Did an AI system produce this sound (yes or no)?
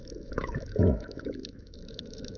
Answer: yes